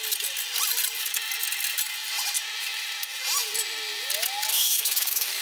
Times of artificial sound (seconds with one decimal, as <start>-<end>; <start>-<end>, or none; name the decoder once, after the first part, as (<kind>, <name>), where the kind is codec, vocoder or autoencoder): 4.5-5.4 (codec, DAC)